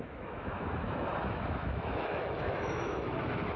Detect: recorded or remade remade